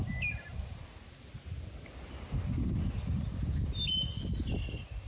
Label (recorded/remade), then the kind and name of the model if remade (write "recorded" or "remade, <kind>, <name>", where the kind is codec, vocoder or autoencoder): recorded